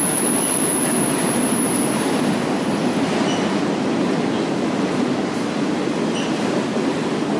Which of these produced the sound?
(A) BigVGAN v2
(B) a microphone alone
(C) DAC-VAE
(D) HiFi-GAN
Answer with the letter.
B